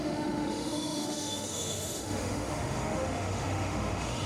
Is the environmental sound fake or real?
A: fake